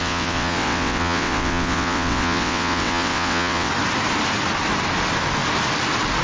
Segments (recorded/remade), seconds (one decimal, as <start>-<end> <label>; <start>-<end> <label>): 0.0-3.7 remade; 3.7-6.2 recorded